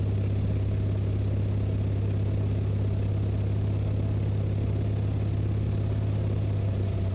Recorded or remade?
recorded